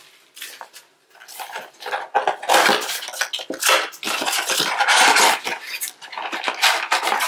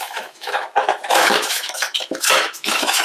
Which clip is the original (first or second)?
first